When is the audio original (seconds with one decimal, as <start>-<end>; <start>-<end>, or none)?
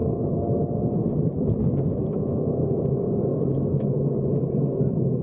0.0-1.9; 2.8-3.3; 4.0-5.2